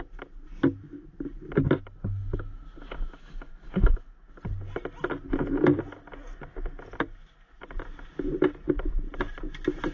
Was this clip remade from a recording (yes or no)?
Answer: no